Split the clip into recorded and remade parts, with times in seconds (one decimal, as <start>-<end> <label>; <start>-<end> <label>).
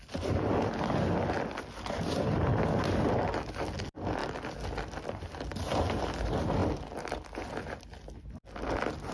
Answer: 0.0-9.1 recorded